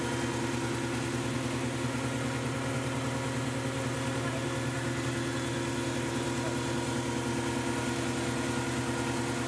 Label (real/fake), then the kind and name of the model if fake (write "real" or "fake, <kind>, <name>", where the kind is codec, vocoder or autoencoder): real